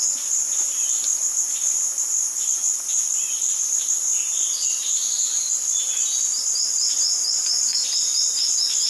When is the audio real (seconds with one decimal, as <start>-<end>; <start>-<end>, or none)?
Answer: 0.0-8.9